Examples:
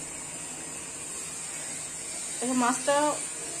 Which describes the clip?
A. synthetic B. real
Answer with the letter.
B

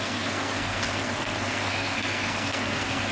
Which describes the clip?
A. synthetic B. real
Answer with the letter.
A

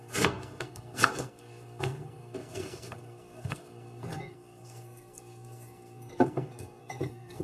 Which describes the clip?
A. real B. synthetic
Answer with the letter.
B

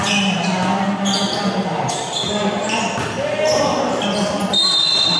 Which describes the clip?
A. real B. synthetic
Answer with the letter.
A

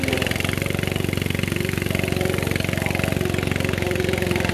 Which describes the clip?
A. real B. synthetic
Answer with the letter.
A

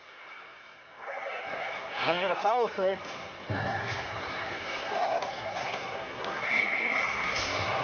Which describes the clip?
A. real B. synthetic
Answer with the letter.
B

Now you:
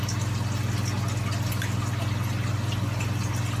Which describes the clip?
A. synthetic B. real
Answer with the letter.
B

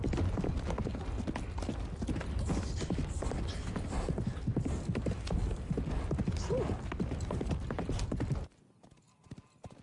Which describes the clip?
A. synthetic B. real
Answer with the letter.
B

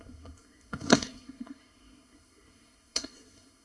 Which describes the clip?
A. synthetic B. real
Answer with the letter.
A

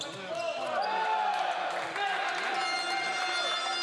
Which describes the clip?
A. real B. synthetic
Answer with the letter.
A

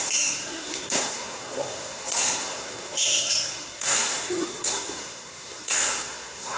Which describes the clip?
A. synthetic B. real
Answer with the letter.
A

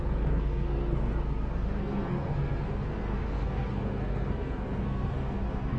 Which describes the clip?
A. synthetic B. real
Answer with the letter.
A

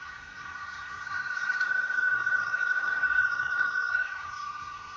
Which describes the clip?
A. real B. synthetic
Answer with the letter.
B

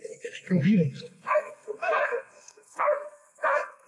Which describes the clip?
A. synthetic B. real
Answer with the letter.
A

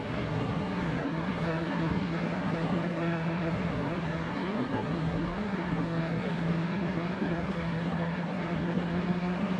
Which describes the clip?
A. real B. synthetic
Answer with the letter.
B